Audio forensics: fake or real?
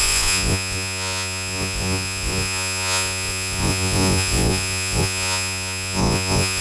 fake